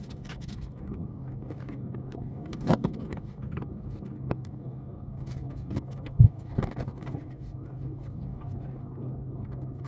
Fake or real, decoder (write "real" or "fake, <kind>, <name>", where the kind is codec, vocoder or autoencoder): fake, codec, DAC